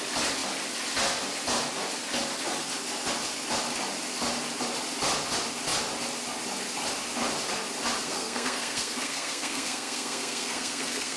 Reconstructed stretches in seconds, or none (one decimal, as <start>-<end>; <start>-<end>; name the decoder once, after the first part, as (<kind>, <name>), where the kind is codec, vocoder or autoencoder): 8.0-11.2 (codec, SNAC)